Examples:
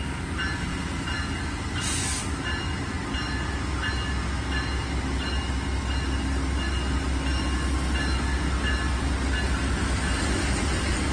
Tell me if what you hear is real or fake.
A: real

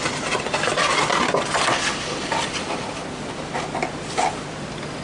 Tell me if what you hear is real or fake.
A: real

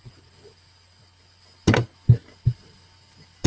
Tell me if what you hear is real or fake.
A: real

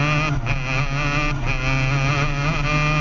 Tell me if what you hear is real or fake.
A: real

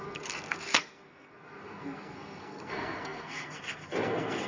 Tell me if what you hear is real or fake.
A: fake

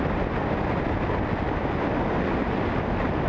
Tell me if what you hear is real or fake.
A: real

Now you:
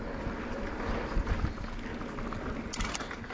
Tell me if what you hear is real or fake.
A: real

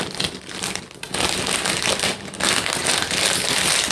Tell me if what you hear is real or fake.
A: real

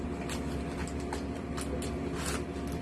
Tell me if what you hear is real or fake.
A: real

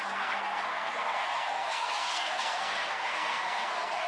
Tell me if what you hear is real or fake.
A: fake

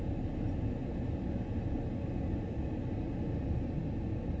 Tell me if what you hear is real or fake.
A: real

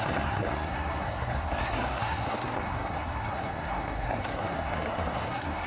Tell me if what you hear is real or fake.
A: fake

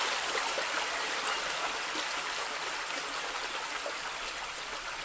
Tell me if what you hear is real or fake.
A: real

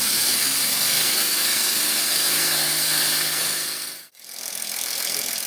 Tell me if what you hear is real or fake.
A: fake